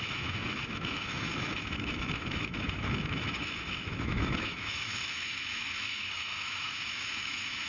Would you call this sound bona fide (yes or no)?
no